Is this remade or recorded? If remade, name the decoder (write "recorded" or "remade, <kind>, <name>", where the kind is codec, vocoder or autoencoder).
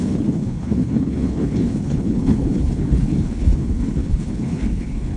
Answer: remade, codec, HILCodec